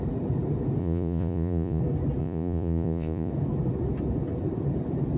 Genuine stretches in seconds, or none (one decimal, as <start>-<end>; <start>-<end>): 0.0-0.8; 1.8-2.2; 3.3-5.2